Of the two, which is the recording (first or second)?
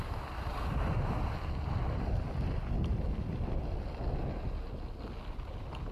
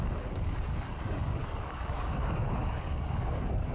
first